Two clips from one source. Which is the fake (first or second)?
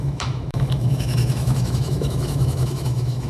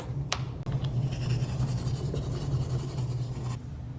first